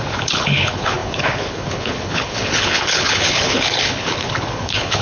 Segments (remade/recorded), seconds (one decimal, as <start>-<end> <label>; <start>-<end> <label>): 0.0-5.0 remade